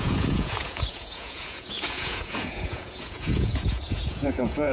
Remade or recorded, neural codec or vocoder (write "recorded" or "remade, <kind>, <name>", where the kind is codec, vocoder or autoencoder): remade, vocoder, Vocos